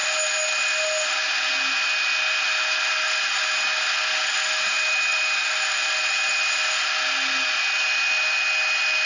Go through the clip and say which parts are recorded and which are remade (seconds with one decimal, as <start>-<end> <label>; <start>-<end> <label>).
0.0-9.1 recorded

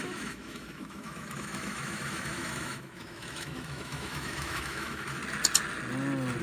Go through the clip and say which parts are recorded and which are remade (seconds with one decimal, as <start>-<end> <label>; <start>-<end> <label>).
0.0-5.2 remade; 5.2-6.4 recorded

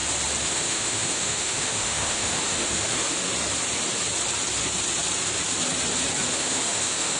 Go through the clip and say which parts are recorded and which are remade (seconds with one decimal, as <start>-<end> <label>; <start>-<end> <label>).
0.0-0.5 recorded; 0.5-3.2 remade; 3.2-6.3 recorded; 6.3-7.2 remade

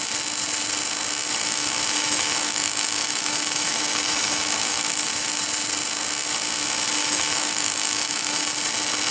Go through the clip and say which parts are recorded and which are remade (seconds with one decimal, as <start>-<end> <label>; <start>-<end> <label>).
0.0-1.4 recorded; 1.4-5.4 remade; 5.4-7.0 recorded; 7.0-8.5 remade; 8.5-9.1 recorded